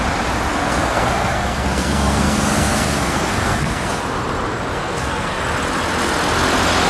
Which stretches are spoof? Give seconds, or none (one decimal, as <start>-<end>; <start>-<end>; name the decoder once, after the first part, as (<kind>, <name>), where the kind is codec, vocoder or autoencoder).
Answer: 0.5-4.0 (codec, SNAC); 4.7-5.4

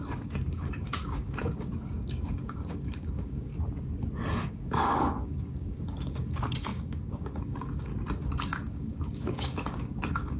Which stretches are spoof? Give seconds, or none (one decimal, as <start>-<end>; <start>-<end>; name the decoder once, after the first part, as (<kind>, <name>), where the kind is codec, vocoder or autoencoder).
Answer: 0.0-3.5 (codec, DAC); 4.4-7.9; 8.4-10.4

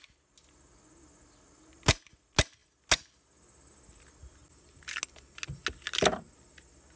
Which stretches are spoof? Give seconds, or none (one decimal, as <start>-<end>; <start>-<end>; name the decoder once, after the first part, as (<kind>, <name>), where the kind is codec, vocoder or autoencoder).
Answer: none